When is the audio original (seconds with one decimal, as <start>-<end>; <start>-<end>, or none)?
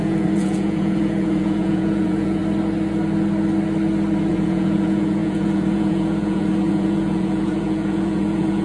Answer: 2.4-4.3